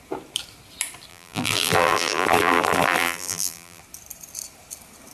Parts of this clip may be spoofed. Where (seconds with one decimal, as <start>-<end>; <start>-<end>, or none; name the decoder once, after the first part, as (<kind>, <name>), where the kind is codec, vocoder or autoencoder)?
1.1-3.8 (vocoder, BigVGAN v2)